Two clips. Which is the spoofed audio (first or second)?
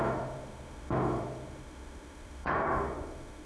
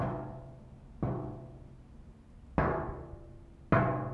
first